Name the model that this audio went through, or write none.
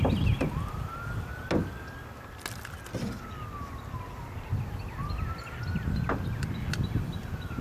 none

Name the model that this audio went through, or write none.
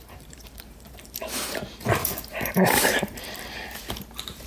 vocoder, BigVGAN v2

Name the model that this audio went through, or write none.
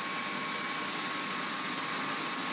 none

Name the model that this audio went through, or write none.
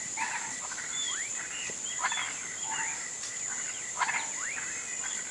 vocoder, BigVGAN v2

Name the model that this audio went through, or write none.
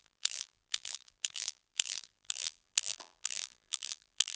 vocoder, BigVGAN v2